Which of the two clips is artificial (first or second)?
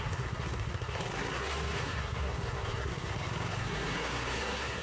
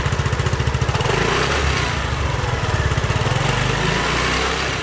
first